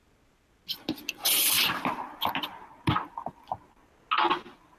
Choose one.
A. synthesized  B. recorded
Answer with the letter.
B